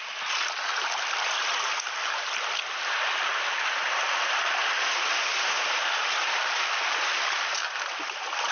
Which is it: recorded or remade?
recorded